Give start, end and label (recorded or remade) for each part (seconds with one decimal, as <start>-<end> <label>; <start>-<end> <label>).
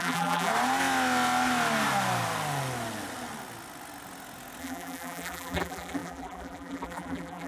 0.0-0.5 remade; 0.5-4.6 recorded; 4.6-7.5 remade